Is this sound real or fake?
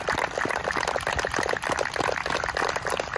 real